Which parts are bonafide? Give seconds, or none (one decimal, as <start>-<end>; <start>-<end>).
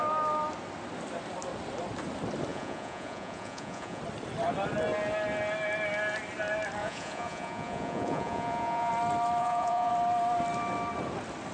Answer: 0.0-2.5; 4.0-6.8; 8.9-9.4; 9.9-11.5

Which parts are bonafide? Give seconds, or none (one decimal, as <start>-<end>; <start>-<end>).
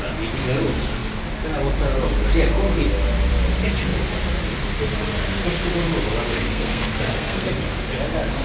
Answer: 0.0-6.5; 7.5-8.4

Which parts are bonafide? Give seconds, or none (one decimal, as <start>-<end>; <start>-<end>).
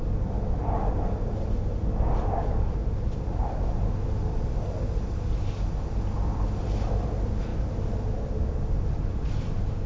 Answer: 0.0-9.9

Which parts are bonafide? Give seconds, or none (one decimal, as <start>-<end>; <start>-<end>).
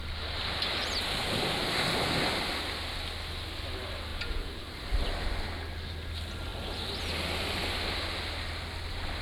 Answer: 0.0-4.1; 4.6-9.2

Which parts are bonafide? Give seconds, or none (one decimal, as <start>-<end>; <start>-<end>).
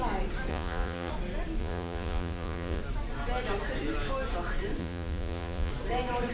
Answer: 0.0-0.5; 1.1-1.6; 2.8-4.8; 5.7-6.3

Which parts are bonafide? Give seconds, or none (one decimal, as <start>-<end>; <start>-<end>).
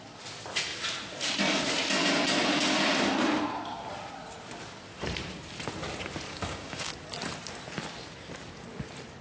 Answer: 0.0-6.3; 6.9-9.2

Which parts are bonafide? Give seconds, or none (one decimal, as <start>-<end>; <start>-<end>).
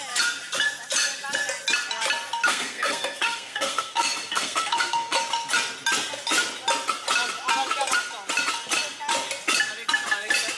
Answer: 0.0-2.5; 5.2-10.6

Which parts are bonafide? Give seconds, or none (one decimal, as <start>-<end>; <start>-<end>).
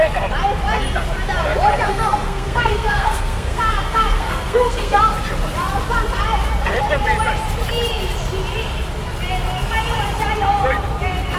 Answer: 0.0-1.9; 5.0-11.4